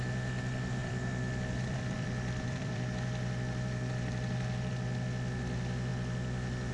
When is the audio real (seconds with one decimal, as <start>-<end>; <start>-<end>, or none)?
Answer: 0.0-0.8; 4.7-6.7